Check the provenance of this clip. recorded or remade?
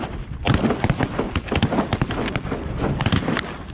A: recorded